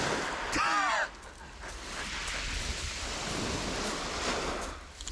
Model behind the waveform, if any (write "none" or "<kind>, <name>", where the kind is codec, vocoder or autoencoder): none